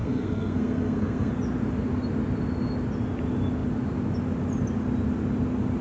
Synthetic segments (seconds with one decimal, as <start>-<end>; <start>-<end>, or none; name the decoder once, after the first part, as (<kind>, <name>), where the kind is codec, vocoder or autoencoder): 0.0-1.3 (codec, SNAC)